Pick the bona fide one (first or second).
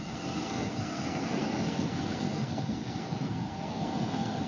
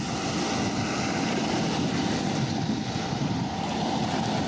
second